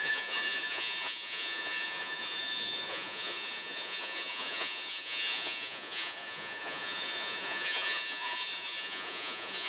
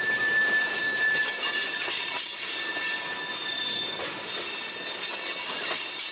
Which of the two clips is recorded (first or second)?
second